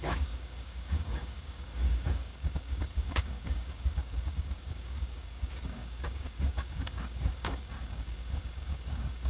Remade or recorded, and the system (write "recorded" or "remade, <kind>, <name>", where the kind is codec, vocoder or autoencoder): remade, codec, DAC